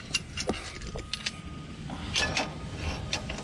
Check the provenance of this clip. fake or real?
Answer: real